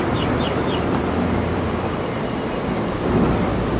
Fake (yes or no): yes